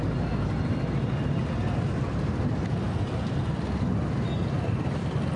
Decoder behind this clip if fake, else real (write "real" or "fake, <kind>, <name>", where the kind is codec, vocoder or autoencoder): real